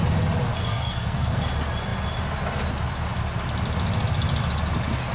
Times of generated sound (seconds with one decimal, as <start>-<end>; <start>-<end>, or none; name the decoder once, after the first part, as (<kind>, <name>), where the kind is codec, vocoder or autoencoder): 0.6-1.5 (codec, SNAC)